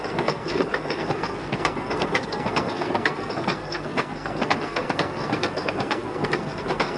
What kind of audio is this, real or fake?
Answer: fake